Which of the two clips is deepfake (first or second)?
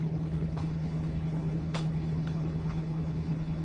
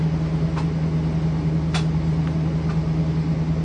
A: first